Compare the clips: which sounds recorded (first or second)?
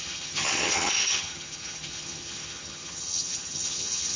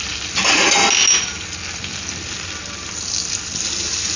second